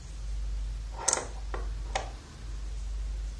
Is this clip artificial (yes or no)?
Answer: no